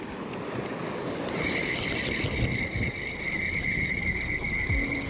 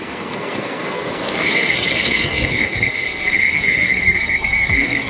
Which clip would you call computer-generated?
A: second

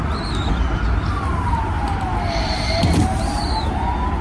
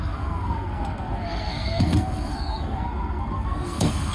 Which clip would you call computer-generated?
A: second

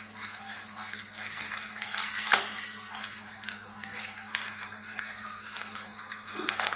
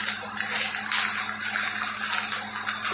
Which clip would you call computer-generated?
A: first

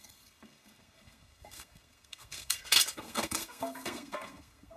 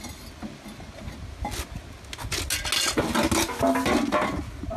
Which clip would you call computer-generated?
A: first